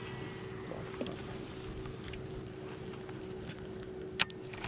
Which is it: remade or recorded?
recorded